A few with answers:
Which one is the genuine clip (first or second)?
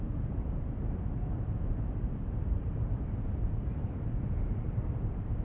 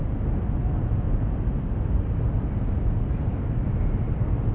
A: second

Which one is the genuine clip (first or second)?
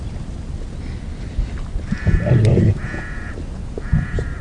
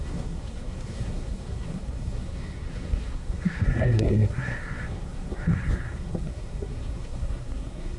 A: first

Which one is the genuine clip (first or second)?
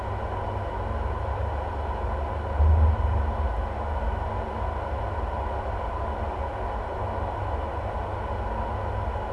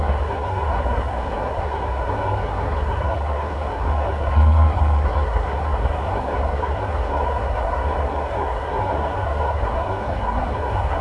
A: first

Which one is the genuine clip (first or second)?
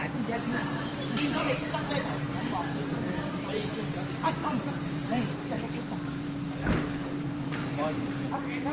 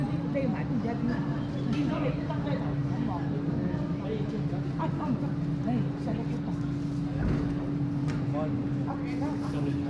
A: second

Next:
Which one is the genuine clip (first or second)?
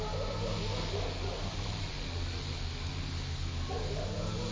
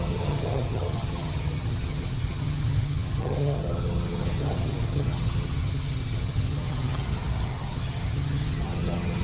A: first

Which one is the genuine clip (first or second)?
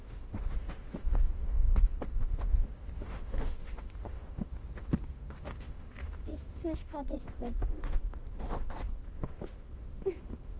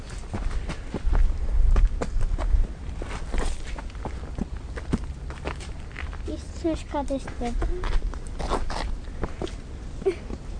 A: second